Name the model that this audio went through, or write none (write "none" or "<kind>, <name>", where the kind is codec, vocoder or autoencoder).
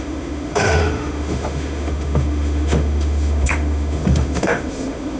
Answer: autoencoder, DAC-VAE